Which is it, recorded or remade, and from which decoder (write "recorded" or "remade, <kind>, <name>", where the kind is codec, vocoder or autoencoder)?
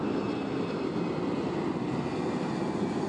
recorded